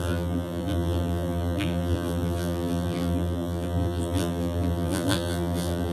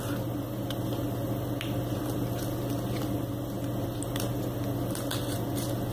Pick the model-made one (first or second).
first